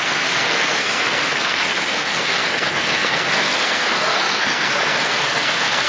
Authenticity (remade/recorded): remade